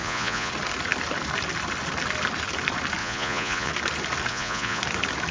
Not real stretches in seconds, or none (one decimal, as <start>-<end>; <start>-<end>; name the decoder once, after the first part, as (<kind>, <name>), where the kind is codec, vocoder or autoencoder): 0.0-0.5 (vocoder, Vocos); 3.0-3.7; 4.3-4.8

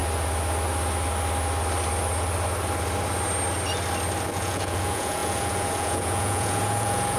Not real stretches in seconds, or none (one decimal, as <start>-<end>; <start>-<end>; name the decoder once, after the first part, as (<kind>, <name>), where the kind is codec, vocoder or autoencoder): 4.3-7.2 (vocoder, Vocos)